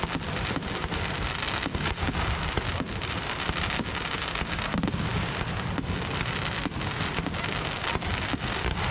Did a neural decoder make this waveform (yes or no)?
no